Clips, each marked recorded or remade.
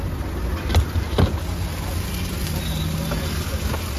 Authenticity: recorded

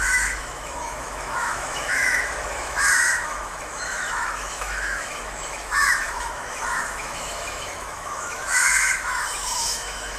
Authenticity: remade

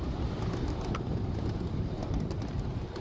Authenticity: remade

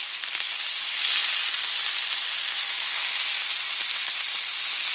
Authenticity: recorded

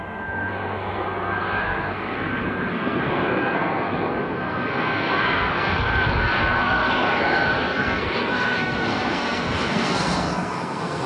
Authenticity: remade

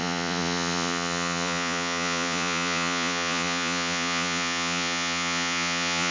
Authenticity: remade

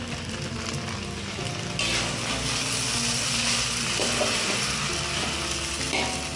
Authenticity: recorded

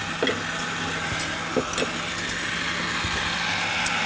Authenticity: recorded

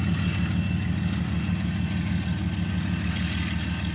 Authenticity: recorded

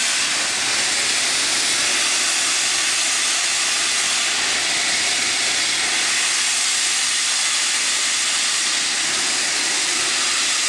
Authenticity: recorded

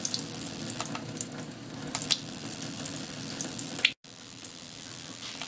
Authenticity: recorded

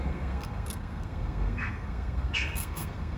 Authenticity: remade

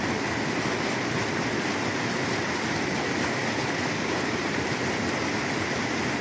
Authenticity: recorded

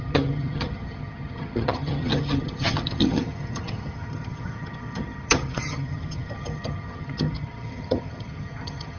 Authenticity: remade